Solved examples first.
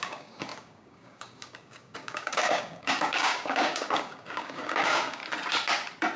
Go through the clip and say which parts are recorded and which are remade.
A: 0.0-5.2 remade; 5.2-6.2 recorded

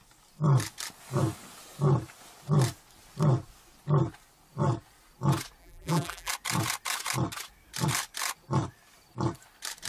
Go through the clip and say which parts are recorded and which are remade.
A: 0.0-5.6 recorded; 5.6-6.3 remade; 6.3-9.9 recorded